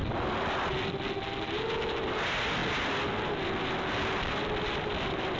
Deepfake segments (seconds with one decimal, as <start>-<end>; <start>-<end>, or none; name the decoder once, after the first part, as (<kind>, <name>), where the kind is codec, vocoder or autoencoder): none